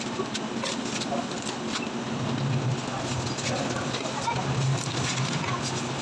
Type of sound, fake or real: real